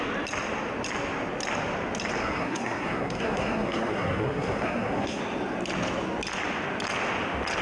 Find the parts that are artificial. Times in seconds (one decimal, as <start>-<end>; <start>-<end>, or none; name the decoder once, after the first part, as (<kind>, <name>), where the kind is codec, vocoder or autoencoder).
2.2-5.2 (codec, SNAC)